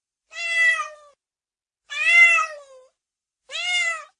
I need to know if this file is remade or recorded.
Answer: recorded